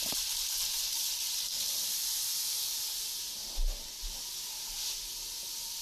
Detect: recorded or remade recorded